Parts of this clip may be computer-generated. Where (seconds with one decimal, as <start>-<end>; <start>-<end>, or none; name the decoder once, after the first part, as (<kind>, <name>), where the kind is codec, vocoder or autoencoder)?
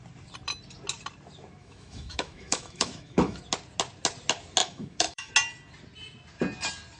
1.6-3.4 (autoencoder, DAC-VAE); 4.6-5.3